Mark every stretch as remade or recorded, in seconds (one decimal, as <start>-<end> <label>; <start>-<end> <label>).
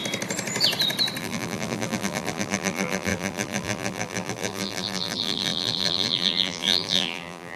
0.0-1.2 recorded; 1.2-7.6 remade